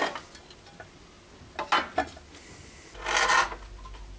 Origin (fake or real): real